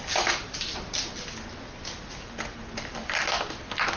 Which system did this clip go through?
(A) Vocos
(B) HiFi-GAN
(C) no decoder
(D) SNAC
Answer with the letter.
C